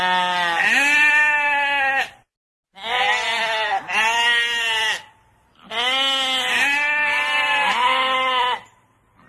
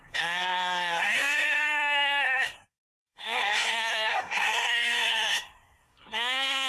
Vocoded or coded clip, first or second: second